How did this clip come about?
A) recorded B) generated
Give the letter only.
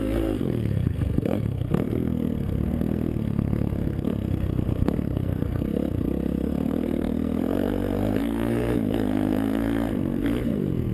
B